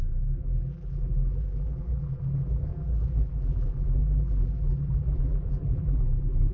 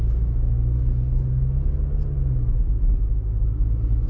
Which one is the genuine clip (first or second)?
second